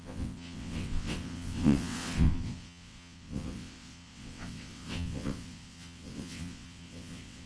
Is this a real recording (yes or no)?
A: no